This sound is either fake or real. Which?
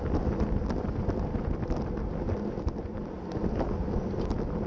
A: real